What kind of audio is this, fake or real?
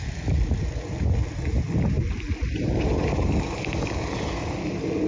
real